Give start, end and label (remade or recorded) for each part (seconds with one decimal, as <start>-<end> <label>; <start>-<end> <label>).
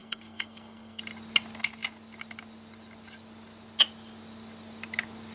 0.0-1.0 remade; 1.0-5.3 recorded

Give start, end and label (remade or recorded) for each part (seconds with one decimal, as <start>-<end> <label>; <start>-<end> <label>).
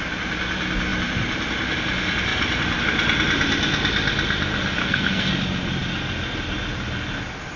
0.0-4.8 recorded; 4.8-5.3 remade; 5.3-7.6 recorded